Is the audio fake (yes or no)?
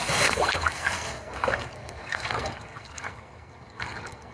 yes